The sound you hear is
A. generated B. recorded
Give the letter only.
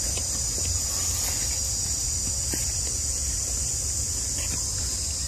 B